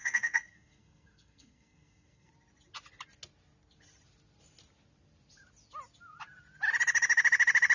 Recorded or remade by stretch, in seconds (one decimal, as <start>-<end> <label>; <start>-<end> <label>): 0.0-2.3 remade; 2.3-7.7 recorded